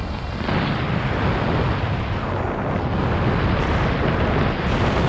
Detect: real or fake real